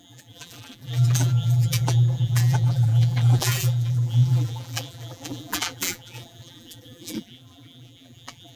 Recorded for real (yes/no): no